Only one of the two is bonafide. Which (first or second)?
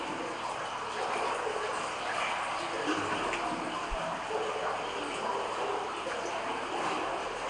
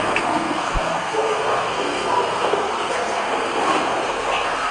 first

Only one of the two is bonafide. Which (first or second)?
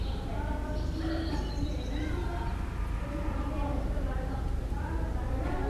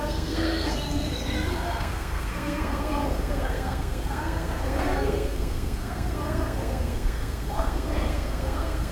first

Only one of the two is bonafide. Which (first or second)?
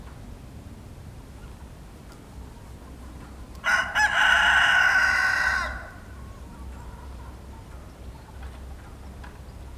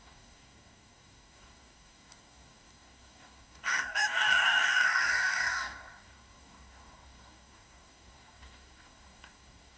first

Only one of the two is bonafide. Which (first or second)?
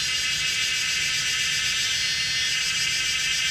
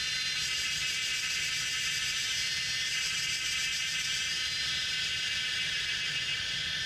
first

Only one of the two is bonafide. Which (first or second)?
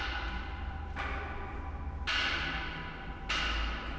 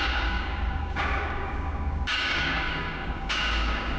first